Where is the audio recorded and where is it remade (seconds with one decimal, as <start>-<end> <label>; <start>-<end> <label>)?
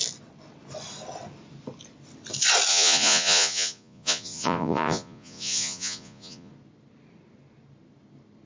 0.0-2.7 recorded; 2.7-6.5 remade; 6.5-8.5 recorded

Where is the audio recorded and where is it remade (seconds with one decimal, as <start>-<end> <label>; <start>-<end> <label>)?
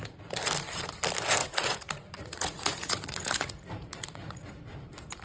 0.0-1.4 recorded; 1.4-4.5 remade; 4.5-5.2 recorded